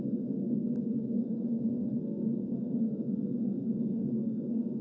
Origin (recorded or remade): remade